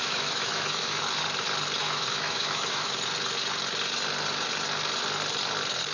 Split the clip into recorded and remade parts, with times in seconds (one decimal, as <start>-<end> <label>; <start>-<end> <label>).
0.0-1.0 remade; 1.0-1.8 recorded; 1.8-2.9 remade; 2.9-5.9 recorded